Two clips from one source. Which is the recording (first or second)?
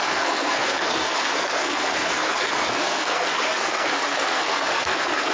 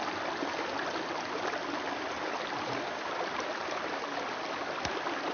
second